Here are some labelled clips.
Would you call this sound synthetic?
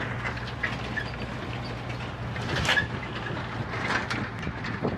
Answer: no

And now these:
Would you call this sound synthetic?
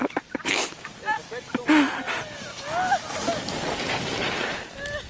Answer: no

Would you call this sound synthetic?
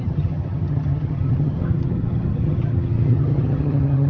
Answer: yes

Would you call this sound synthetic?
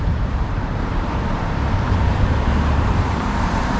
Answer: yes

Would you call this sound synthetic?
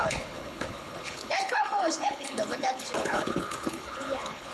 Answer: yes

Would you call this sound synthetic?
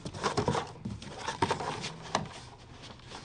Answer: no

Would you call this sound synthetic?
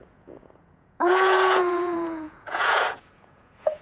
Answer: yes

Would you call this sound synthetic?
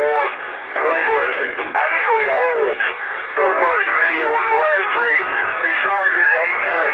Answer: yes